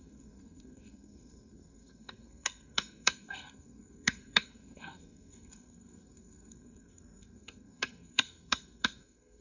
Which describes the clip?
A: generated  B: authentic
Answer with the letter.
A